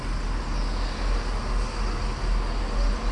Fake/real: real